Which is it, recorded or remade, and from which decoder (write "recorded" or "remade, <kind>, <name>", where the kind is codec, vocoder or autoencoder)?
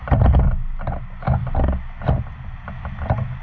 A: recorded